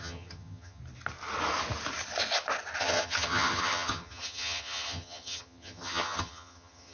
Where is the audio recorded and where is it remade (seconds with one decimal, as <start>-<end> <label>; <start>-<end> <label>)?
0.0-0.8 remade; 0.8-2.8 recorded; 2.8-6.9 remade